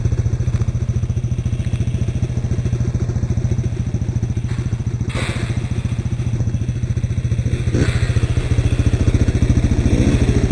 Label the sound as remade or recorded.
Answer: recorded